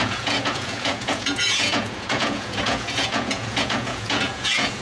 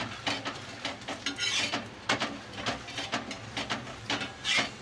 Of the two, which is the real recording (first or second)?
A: second